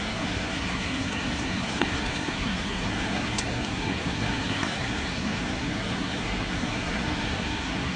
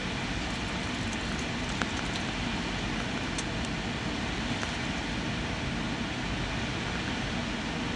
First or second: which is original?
second